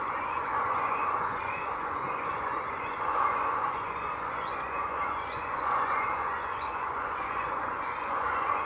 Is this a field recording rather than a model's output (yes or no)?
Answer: no